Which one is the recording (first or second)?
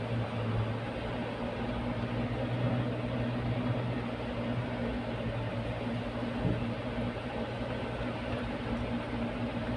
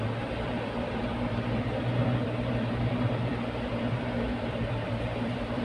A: first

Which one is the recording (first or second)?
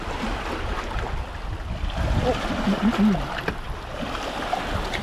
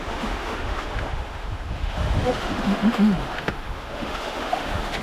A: first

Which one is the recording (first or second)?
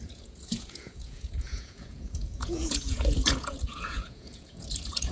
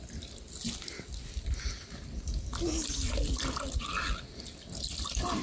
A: second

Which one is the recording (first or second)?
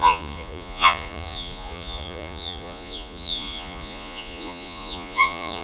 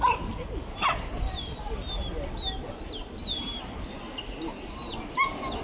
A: second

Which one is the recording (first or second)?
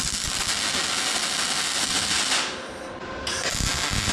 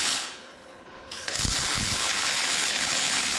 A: first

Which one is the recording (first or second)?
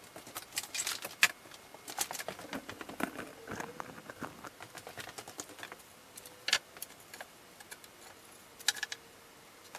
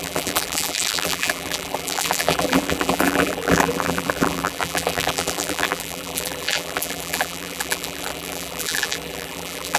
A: first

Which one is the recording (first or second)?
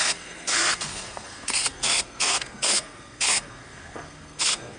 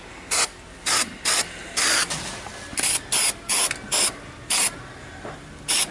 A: second